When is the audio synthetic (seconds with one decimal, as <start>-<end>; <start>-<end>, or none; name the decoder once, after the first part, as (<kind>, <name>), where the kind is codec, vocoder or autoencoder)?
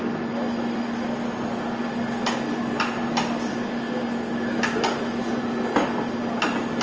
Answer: none